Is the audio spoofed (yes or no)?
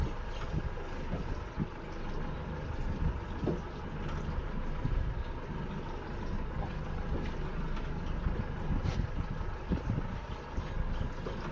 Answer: no